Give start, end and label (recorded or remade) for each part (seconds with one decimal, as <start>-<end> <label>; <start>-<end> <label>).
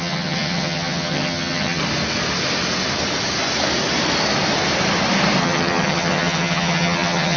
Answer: 0.0-1.8 remade; 1.8-5.4 recorded; 5.4-7.4 remade